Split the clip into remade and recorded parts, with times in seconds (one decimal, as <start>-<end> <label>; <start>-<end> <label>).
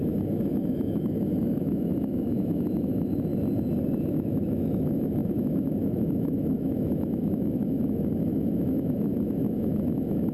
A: 0.0-3.3 remade; 3.3-4.0 recorded; 4.0-10.3 remade